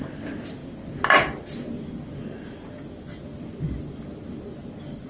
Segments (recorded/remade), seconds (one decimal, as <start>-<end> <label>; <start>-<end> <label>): 0.0-5.1 recorded